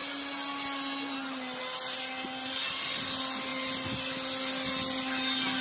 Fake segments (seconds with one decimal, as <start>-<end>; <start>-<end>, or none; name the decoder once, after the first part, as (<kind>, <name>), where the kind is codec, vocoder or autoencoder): none